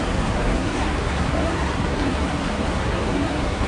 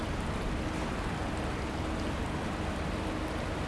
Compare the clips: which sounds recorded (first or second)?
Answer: second